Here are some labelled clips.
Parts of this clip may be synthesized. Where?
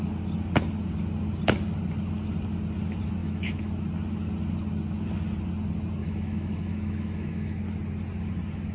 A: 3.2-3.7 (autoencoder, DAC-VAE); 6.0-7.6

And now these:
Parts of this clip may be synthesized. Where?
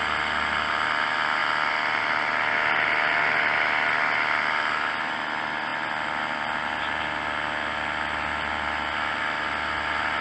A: none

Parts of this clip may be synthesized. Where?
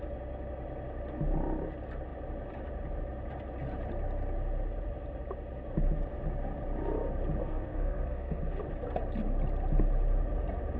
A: 7.4-8.4 (codec, SNAC)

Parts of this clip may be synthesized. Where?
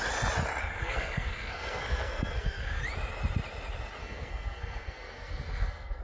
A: 0.6-2.8 (codec, SNAC); 4.0-6.0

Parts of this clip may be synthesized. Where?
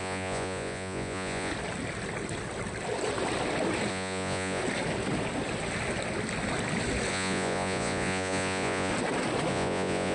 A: 0.0-1.5 (vocoder, Vocos); 3.9-4.6; 7.1-8.9; 9.5-10.1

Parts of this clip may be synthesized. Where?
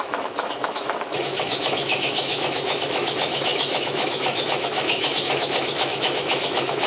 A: 0.0-6.9 (autoencoder, DAC-VAE)